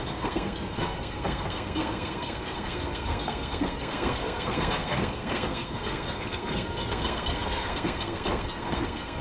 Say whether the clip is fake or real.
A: fake